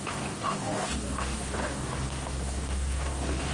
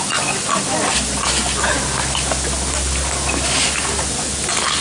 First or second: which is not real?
first